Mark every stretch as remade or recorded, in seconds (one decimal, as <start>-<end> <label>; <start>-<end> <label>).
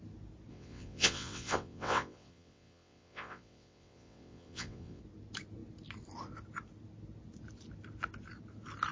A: 0.0-0.5 recorded; 0.5-5.0 remade; 5.0-8.9 recorded